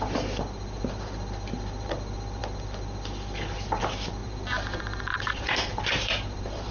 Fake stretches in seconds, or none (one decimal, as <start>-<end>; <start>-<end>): 4.2-6.7